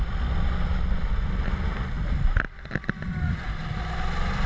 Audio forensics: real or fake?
real